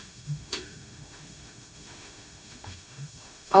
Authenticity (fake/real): fake